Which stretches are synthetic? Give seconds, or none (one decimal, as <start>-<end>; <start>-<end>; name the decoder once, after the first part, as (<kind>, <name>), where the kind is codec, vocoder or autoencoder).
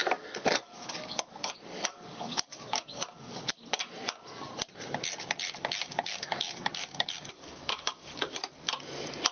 0.0-3.5 (codec, DAC); 5.8-8.4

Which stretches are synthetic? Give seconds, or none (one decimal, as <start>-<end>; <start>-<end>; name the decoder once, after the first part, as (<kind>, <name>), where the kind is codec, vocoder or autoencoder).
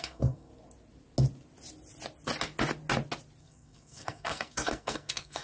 0.0-0.5 (codec, SNAC); 3.4-5.4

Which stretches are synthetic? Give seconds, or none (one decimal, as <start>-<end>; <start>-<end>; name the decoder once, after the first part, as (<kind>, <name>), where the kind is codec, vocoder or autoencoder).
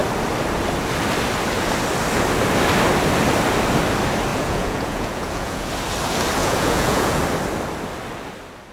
4.3-5.7 (vocoder, Vocos); 6.4-7.2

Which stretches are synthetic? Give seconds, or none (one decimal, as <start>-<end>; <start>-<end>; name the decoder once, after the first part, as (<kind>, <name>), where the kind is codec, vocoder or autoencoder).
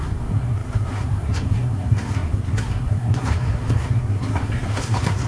0.0-5.3 (codec, SNAC)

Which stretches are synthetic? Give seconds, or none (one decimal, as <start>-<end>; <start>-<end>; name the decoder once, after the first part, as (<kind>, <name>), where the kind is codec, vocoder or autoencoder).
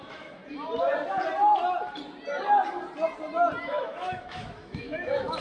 0.0-0.4 (autoencoder, DAC-VAE); 3.6-5.4